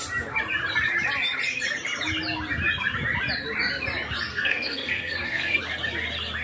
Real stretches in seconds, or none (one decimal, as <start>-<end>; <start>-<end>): 0.0-4.3; 5.6-6.4